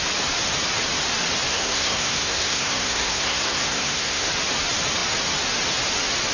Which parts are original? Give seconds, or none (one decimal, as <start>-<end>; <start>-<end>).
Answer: 0.0-1.5; 4.3-6.3